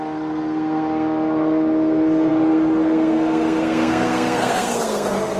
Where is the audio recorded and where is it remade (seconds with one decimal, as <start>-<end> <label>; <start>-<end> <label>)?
0.0-5.4 remade